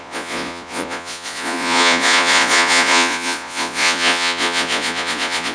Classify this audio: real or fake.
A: fake